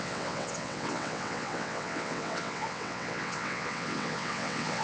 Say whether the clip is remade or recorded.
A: remade